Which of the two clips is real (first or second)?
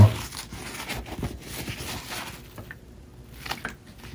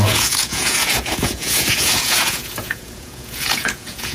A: first